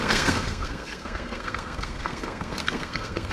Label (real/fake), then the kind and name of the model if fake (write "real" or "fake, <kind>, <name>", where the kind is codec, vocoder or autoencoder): fake, codec, SNAC